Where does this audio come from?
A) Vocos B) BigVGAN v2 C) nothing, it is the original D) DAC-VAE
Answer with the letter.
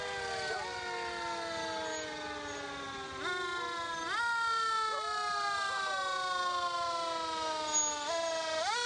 C